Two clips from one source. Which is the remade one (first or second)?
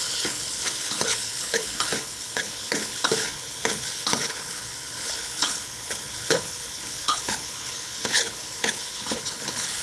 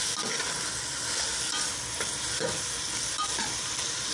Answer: first